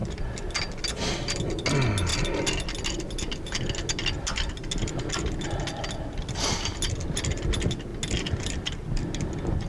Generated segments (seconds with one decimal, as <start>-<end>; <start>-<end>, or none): none